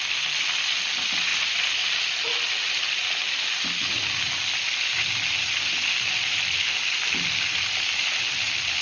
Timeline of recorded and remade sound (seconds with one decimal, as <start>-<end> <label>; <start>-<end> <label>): 0.0-8.8 recorded